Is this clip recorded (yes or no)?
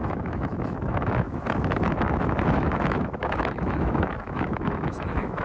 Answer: no